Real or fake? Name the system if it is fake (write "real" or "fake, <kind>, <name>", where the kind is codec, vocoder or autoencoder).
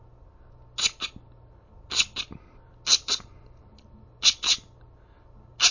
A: real